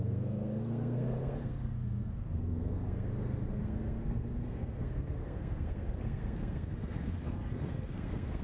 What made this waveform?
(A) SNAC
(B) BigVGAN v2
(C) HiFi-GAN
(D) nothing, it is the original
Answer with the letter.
A